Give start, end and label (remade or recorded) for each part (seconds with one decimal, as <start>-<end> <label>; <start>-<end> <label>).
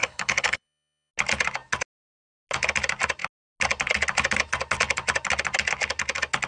0.0-1.1 remade; 1.1-6.5 recorded